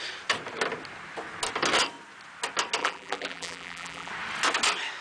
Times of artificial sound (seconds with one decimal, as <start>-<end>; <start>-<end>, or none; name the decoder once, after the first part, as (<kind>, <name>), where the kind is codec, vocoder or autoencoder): 2.8-4.1 (vocoder, BigVGAN v2)